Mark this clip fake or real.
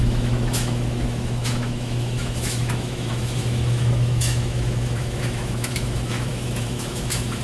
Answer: fake